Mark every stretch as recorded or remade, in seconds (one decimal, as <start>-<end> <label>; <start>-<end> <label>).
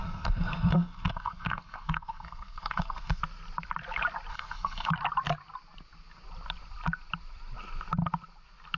0.0-3.2 remade; 3.2-4.3 recorded; 4.3-4.9 remade; 4.9-8.8 recorded